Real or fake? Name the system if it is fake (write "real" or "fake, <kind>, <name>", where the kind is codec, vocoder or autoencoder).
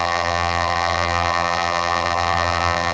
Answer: fake, vocoder, BigVGAN v2